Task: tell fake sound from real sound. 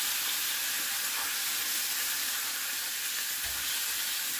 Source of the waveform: real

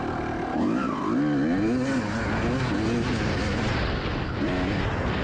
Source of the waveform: real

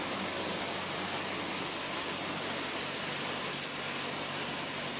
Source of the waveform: real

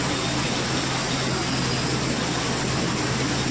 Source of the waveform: real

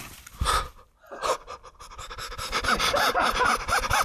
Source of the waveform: real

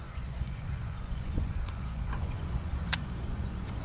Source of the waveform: fake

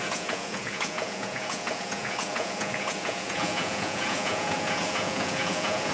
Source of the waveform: fake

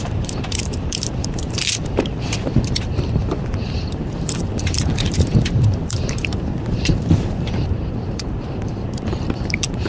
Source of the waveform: fake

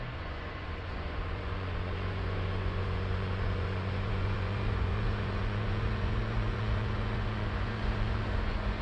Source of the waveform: fake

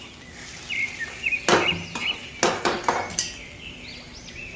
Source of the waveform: real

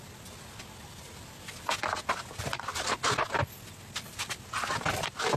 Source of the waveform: real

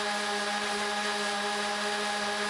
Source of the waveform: real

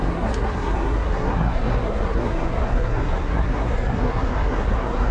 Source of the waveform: fake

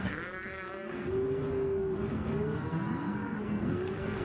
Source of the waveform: fake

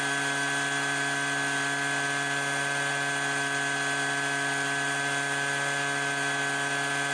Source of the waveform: real